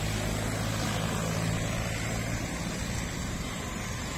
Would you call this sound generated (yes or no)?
no